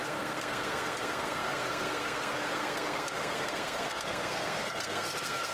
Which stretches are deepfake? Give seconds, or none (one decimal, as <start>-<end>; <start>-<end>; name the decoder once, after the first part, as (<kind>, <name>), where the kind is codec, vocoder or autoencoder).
0.0-5.5 (codec, SNAC)

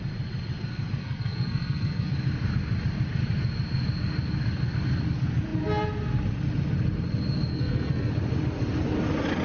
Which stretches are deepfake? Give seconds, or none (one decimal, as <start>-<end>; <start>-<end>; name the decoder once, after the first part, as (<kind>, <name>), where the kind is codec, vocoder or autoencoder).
1.0-2.1 (codec, SNAC); 7.5-8.1

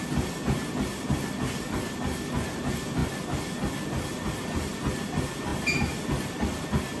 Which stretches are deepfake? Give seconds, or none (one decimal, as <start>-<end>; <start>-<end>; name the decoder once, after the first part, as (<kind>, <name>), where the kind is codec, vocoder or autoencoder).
none

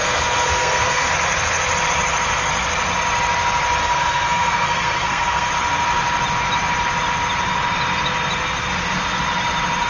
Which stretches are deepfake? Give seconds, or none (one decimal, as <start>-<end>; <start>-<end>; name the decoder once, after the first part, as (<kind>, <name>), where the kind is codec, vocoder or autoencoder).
0.0-1.1 (codec, SNAC); 3.8-5.5

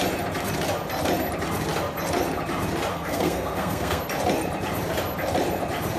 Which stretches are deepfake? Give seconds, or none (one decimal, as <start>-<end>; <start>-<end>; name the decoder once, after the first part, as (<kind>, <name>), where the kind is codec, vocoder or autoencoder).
2.9-4.0 (codec, SNAC)

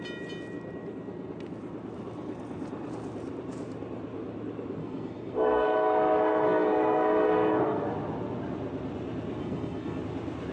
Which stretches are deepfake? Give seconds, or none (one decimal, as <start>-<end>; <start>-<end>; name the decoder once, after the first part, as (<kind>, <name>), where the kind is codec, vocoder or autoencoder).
4.8-7.8 (codec, SNAC); 9.4-10.0

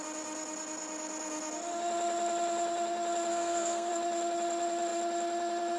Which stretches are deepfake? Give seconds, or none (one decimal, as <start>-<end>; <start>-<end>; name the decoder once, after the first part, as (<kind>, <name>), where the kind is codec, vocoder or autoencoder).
3.3-3.9 (codec, SNAC)